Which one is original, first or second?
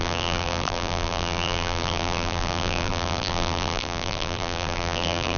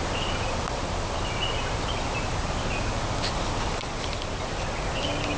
second